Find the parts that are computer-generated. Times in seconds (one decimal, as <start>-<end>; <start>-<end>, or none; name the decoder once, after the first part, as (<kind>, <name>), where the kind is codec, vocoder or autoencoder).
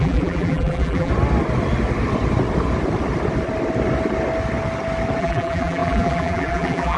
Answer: 0.0-1.1 (vocoder, BigVGAN v2); 5.2-7.0